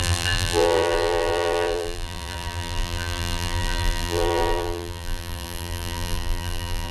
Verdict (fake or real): fake